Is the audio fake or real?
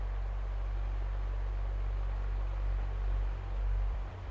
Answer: fake